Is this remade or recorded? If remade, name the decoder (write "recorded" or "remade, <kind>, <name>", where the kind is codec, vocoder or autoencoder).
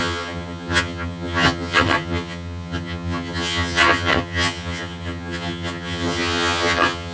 remade, vocoder, HiFi-GAN